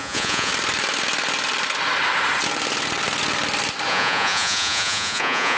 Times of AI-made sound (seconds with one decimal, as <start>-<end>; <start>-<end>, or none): 0.0-0.5; 3.9-5.6